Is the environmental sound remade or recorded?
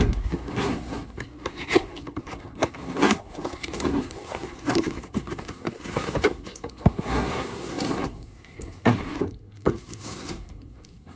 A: remade